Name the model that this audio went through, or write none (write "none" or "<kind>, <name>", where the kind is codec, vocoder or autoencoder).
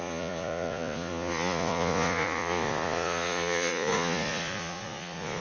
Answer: vocoder, Vocos